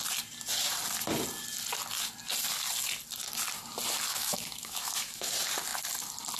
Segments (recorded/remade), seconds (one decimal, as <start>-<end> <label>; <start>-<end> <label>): 0.0-4.1 recorded; 4.1-5.3 remade; 5.3-6.4 recorded